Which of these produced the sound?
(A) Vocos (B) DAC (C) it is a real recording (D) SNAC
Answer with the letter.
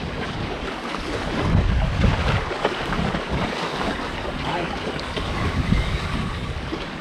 B